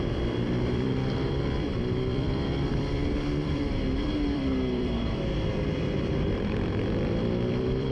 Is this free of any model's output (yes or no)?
no